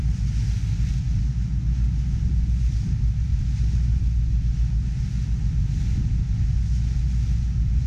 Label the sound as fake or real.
real